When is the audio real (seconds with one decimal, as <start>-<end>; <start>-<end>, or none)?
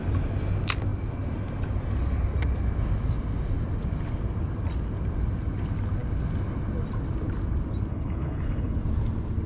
0.0-7.9; 8.7-9.5